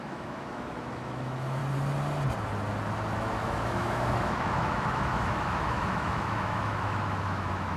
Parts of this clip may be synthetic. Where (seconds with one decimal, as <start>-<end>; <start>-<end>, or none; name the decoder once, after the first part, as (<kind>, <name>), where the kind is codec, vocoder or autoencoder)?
0.0-1.6 (autoencoder, DAC-VAE); 3.1-7.8